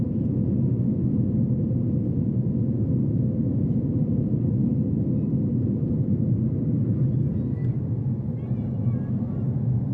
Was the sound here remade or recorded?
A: recorded